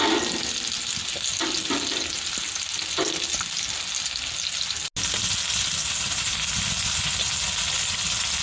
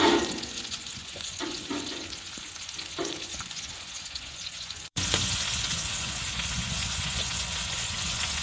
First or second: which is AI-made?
second